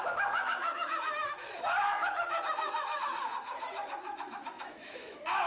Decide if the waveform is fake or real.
fake